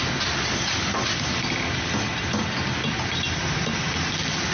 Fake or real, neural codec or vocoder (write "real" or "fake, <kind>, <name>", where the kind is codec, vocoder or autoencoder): real